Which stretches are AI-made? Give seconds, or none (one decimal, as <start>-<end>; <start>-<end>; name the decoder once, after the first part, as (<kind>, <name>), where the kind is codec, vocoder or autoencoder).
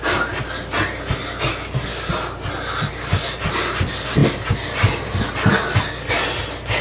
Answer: none